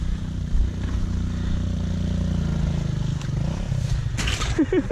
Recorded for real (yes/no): yes